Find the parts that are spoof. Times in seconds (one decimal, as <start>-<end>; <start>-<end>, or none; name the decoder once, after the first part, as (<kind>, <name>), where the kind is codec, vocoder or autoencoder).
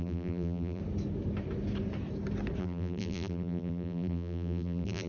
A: 0.0-0.8 (vocoder, BigVGAN v2); 2.6-5.1